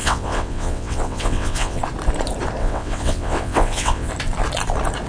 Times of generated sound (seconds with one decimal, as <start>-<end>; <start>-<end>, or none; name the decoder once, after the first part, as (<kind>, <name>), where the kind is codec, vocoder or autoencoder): 0.0-1.8 (vocoder, WaveNeXt); 2.6-4.1